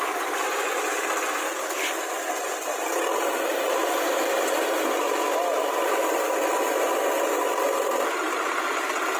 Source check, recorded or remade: recorded